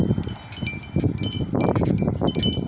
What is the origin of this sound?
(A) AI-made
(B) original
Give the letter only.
B